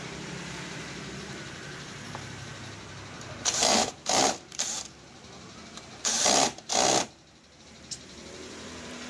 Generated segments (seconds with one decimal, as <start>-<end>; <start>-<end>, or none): 0.0-6.7; 7.6-9.1